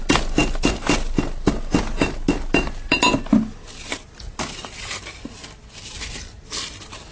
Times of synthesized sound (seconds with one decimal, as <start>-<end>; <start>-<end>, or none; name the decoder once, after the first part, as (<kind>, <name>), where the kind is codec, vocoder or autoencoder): none